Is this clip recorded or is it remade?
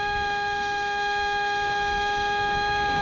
remade